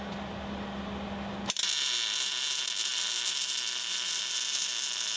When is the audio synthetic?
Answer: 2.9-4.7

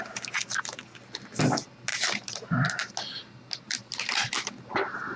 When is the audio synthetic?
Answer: 1.9-2.9

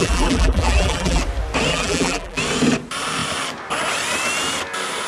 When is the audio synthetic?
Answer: 0.0-1.2; 1.7-2.4

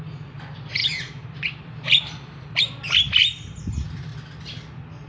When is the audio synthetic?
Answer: 0.8-2.6

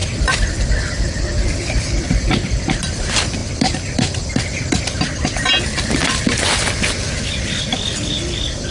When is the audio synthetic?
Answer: 0.0-3.4; 7.3-7.7

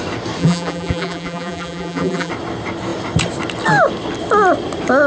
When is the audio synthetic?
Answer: 0.4-2.3